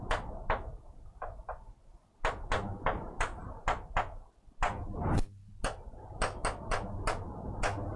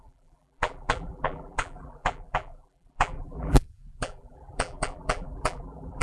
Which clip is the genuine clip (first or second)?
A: first